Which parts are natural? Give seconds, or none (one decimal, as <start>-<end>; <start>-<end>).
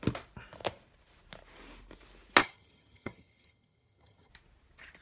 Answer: 0.0-2.4; 4.3-5.0